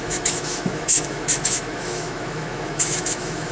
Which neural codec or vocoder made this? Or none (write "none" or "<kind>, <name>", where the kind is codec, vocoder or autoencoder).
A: autoencoder, DAC-VAE